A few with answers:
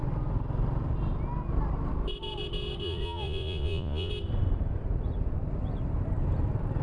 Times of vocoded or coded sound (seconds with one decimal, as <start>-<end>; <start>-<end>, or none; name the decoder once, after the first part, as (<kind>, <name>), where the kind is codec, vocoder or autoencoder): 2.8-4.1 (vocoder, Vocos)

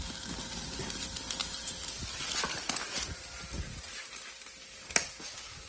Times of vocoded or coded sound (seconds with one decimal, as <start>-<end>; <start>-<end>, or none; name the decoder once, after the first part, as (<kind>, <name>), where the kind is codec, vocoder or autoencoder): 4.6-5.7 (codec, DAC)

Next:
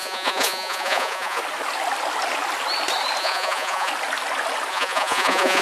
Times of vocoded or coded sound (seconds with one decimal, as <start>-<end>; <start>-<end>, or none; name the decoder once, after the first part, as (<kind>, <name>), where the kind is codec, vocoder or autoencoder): 0.0-1.4 (vocoder, Vocos); 3.2-3.9; 4.7-5.6

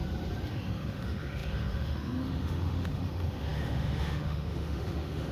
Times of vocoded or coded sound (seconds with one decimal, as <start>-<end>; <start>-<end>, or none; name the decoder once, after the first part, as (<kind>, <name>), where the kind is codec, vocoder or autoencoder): 0.5-5.3 (autoencoder, DAC-VAE)

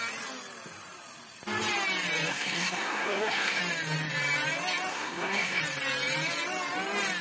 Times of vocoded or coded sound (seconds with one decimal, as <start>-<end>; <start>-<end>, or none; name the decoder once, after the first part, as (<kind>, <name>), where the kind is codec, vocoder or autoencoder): 2.3-3.6 (codec, SNAC); 4.9-5.6

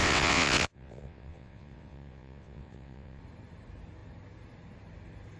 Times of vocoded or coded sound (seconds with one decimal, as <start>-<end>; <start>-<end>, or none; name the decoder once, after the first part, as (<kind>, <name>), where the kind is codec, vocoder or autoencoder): 0.0-3.2 (vocoder, WaveNeXt)